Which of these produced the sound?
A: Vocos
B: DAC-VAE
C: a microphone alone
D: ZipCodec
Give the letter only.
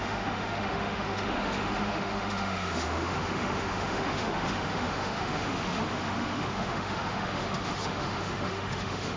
B